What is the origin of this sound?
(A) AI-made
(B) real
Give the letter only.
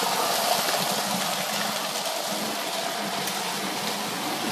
B